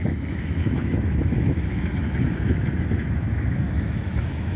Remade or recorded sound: remade